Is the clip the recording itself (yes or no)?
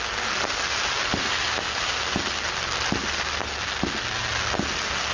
yes